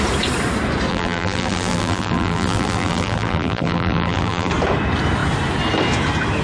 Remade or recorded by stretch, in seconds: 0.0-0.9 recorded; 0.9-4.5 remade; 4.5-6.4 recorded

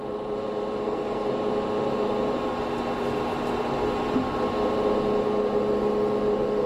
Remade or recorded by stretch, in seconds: 0.0-0.8 recorded; 0.8-1.3 remade; 1.3-6.7 recorded